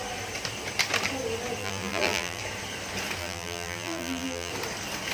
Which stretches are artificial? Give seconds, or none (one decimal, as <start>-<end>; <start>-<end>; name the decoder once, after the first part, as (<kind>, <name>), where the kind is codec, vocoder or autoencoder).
1.6-2.4 (vocoder, BigVGAN v2); 3.2-4.5